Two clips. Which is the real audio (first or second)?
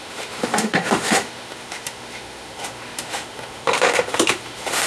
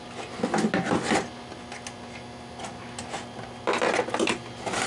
second